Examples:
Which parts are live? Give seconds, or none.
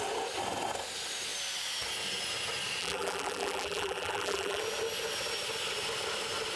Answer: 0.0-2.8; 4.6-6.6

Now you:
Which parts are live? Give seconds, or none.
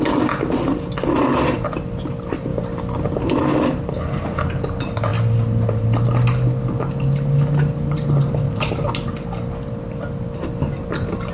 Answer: 0.0-2.5; 3.4-5.1; 8.9-11.3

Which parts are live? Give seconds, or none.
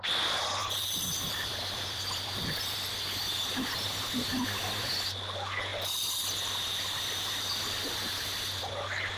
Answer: 0.0-0.6; 3.8-5.7; 8.7-9.2